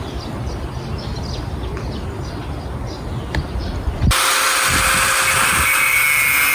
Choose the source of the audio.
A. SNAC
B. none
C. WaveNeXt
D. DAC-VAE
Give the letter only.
B